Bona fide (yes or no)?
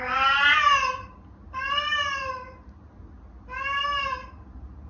yes